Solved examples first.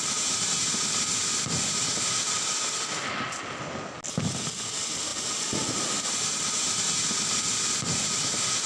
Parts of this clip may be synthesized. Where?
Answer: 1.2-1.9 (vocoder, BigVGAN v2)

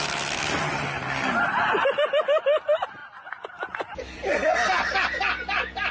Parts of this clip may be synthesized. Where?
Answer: none

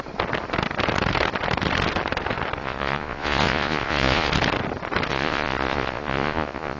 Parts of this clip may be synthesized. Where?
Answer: 2.6-4.3 (vocoder, Vocos); 5.1-6.8

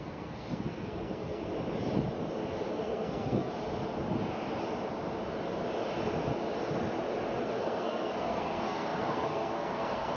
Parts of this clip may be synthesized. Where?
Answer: 0.0-1.5 (codec, SNAC); 2.7-3.5; 7.4-10.2

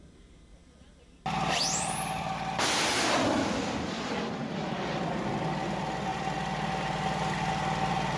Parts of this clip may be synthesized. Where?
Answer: none